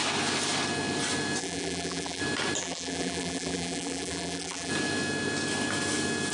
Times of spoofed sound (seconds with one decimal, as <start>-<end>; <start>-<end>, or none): 1.4-2.2; 2.6-4.7